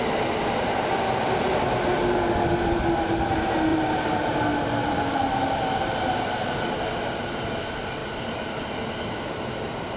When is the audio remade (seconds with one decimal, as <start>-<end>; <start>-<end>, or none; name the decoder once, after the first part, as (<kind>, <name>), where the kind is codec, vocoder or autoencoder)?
3.7-5.0 (vocoder, BigVGAN v2)